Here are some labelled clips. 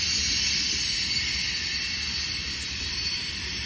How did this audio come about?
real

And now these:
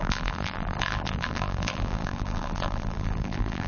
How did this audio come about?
fake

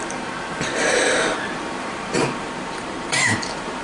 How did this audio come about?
fake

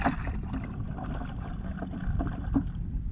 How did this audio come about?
real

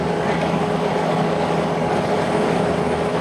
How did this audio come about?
fake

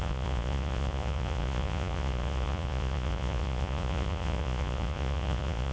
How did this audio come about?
fake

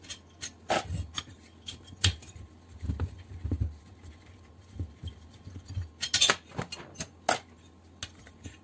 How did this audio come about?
real